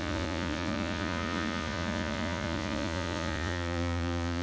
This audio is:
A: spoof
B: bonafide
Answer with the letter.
A